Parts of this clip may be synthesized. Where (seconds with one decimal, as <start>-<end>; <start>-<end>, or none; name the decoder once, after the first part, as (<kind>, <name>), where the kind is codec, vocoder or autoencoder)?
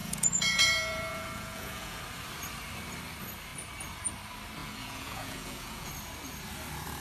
0.0-2.0 (vocoder, Vocos); 4.6-5.9